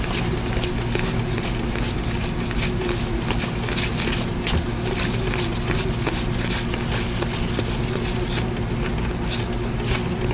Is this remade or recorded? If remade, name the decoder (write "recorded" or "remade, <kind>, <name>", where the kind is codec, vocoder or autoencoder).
recorded